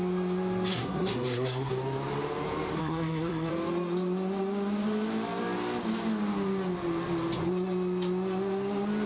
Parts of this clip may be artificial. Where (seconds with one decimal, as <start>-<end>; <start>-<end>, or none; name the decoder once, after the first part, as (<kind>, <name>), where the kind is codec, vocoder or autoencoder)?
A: 0.7-1.7 (codec, SNAC); 2.8-3.5